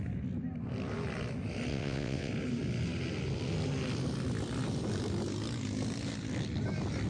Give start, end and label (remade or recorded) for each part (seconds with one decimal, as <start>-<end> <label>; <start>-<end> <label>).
0.0-1.7 recorded; 1.7-2.3 remade; 2.3-7.1 recorded